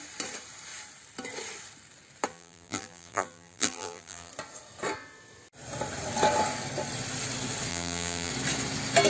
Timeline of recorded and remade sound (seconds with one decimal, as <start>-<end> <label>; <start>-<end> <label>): 0.0-2.3 recorded; 2.3-4.3 remade; 4.3-7.7 recorded; 7.7-8.3 remade; 8.3-9.1 recorded